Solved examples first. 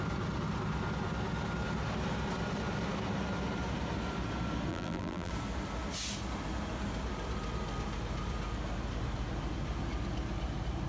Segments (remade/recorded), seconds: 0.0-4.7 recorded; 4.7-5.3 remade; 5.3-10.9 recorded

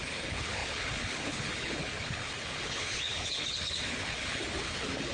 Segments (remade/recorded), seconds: 0.0-5.1 remade

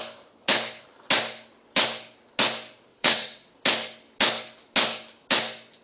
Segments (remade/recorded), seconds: 0.0-2.9 recorded; 2.9-3.5 remade; 3.5-5.8 recorded